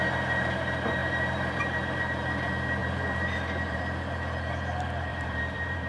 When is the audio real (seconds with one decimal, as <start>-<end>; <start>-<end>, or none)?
0.0-1.0; 1.6-2.8; 3.8-5.1